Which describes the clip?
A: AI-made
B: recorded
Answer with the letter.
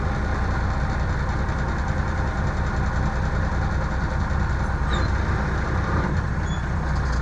B